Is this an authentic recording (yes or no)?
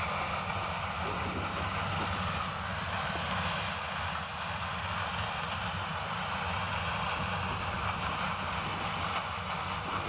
yes